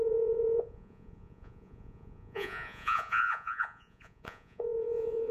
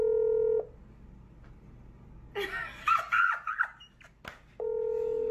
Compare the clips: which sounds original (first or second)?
second